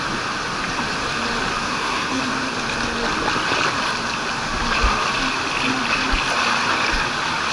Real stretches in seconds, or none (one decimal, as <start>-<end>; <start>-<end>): 0.0-1.6; 2.2-7.5